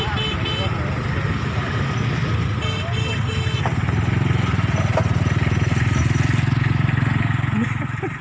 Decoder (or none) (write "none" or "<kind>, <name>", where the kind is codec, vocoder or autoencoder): none